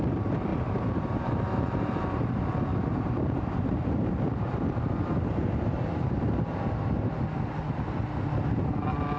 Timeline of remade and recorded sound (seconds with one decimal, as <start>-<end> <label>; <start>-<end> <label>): 0.0-0.5 recorded; 0.5-2.3 remade; 2.3-2.7 recorded; 2.7-7.6 remade; 7.6-9.2 recorded

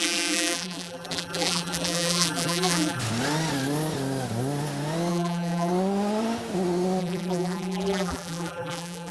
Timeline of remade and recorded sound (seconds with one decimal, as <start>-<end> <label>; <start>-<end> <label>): 0.0-3.0 remade; 3.0-5.1 recorded; 5.1-5.7 remade; 5.7-7.0 recorded; 7.0-9.1 remade

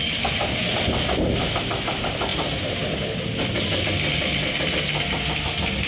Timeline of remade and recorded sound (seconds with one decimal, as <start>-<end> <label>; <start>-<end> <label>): 0.0-5.9 recorded

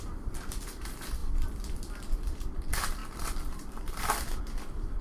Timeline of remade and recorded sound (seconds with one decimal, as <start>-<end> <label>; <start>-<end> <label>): 0.0-5.0 remade

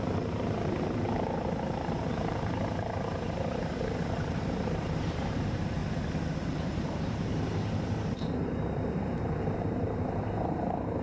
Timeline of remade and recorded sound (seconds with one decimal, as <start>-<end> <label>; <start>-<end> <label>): 0.0-5.8 remade; 5.8-6.3 recorded; 6.3-7.5 remade; 7.5-8.1 recorded; 8.1-11.0 remade

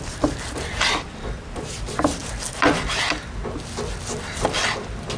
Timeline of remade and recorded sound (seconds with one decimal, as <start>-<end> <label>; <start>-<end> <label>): 0.0-2.2 remade; 2.2-4.2 recorded; 4.2-5.2 remade

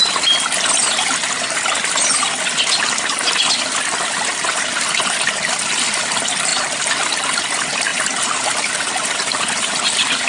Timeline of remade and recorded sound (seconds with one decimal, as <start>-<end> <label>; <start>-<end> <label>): 0.0-10.3 recorded